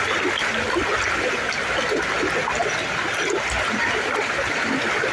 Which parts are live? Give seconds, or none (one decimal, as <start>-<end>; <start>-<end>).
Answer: 0.0-5.1